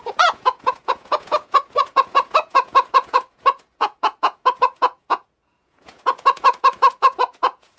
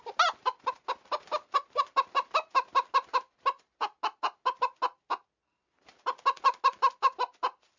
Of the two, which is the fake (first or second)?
first